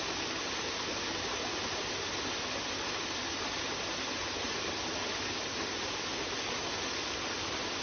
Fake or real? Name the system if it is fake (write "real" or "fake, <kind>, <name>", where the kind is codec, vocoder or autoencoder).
real